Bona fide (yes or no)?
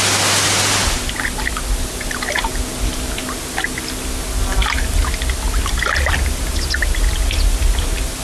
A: yes